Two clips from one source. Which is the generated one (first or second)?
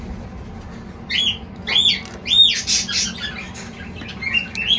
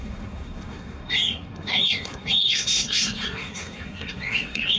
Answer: second